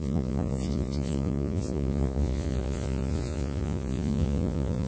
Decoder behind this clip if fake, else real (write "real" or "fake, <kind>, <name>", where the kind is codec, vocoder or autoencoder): fake, vocoder, Vocos